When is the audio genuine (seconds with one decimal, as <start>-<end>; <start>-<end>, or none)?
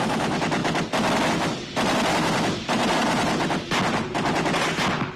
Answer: 0.0-5.2